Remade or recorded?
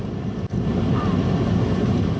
recorded